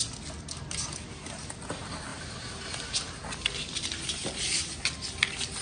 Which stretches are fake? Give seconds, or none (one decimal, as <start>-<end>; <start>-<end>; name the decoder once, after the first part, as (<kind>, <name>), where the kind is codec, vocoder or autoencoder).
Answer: none